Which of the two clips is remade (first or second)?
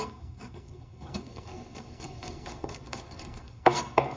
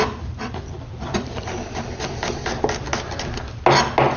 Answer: first